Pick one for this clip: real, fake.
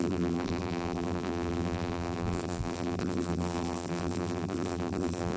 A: fake